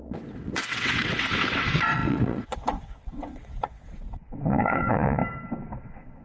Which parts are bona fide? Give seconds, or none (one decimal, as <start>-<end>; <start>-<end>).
5.2-5.8